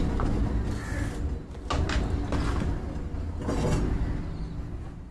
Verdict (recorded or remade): recorded